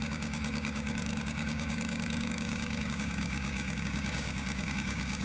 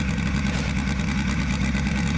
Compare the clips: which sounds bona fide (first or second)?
second